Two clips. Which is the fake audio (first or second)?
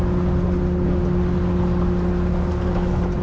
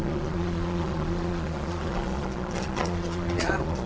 second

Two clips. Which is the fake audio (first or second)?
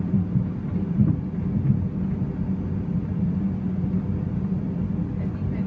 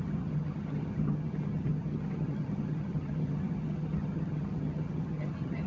second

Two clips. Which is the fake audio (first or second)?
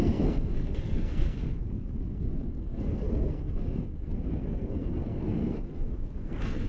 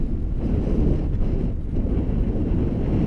first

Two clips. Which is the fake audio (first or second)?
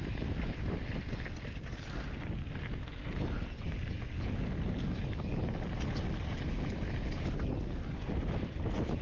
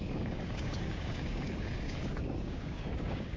second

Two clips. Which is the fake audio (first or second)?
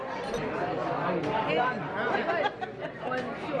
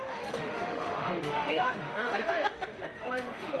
second